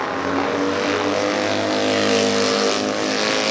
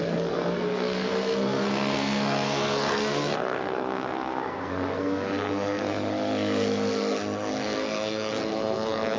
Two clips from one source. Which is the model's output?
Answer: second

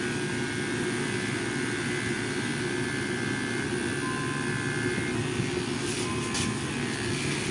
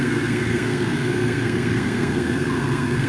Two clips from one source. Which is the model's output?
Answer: second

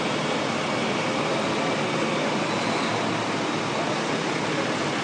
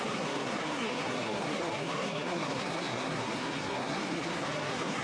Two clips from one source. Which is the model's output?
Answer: second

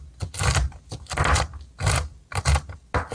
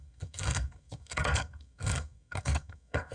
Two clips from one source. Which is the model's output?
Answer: second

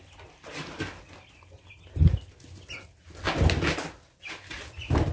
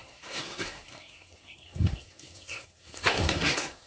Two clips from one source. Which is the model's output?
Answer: second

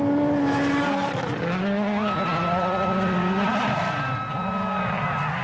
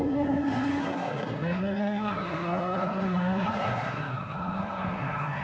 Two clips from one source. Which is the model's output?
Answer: second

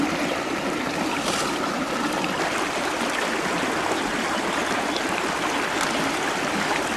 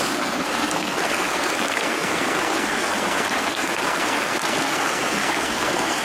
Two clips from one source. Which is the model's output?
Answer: second